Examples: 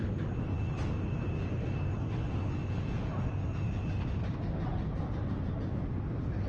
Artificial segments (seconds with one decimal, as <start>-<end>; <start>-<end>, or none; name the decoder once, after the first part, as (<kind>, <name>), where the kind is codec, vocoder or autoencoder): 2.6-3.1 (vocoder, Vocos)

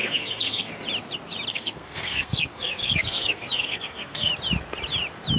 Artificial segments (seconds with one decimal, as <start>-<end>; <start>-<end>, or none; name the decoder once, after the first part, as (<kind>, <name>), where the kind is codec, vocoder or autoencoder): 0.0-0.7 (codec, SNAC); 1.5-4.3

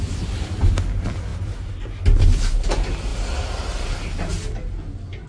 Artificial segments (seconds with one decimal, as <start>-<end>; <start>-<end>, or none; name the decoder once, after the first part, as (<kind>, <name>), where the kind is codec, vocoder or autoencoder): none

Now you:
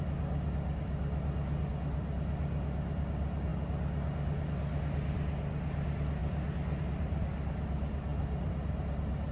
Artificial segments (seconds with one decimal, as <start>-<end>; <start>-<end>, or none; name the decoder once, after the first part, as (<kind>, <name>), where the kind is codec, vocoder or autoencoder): none